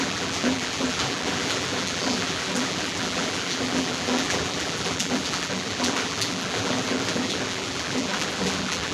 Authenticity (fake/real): fake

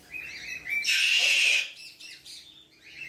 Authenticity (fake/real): real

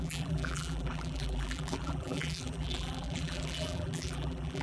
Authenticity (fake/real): fake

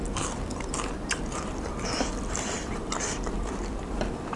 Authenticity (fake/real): fake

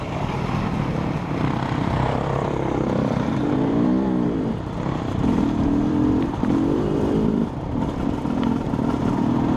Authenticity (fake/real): fake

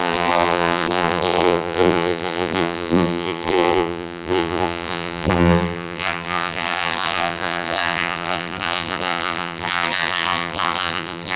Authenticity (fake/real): fake